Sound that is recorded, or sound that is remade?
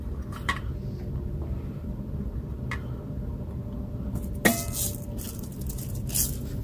recorded